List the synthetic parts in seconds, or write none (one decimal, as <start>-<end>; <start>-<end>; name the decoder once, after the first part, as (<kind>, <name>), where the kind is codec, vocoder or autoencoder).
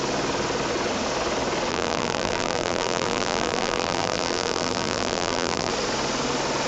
1.7-5.7 (vocoder, BigVGAN v2)